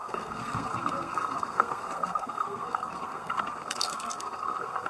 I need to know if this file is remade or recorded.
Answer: remade